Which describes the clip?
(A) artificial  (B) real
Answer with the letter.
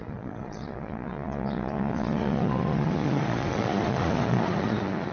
A